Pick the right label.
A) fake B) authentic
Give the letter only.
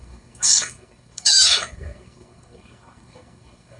A